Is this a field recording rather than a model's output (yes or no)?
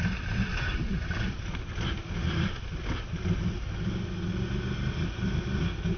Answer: yes